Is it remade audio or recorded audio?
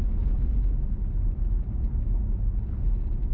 recorded